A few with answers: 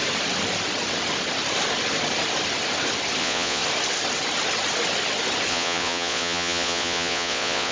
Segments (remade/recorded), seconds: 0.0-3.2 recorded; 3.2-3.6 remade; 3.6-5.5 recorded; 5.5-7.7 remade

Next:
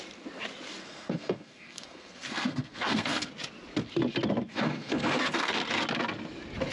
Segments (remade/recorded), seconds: 0.0-0.8 recorded; 0.8-3.3 remade; 3.3-4.5 recorded; 4.5-5.5 remade; 5.5-6.7 recorded

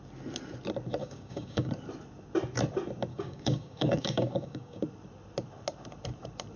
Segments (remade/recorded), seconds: 0.0-1.0 recorded; 1.0-1.7 remade; 1.7-3.1 recorded; 3.1-4.8 remade; 4.8-6.6 recorded

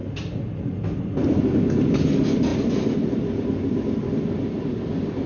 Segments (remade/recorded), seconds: 0.0-5.3 recorded